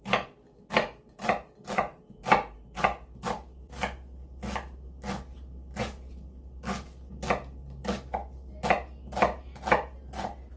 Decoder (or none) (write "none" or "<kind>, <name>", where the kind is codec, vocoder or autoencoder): none